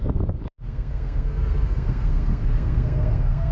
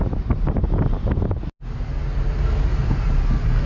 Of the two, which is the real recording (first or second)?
second